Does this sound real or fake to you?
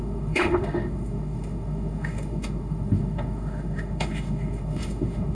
fake